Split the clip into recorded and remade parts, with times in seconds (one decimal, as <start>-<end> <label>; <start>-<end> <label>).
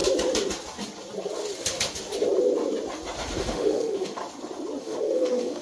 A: 0.0-3.4 recorded; 3.4-4.2 remade; 4.2-4.8 recorded; 4.8-5.6 remade